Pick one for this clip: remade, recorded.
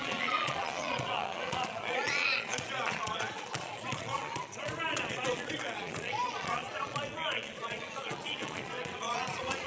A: remade